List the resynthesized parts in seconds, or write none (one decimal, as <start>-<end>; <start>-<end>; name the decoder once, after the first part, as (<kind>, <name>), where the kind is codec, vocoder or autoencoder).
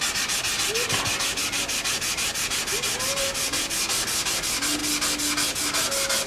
none